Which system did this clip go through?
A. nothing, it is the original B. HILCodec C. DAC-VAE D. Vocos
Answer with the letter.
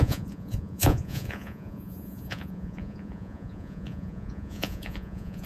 D